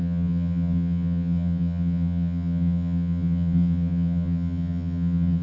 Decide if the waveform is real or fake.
fake